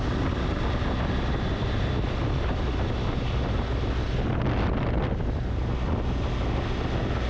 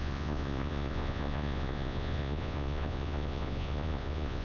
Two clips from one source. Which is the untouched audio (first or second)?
first